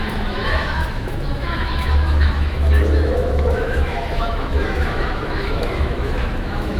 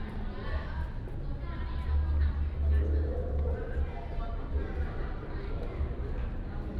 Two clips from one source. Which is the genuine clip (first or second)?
second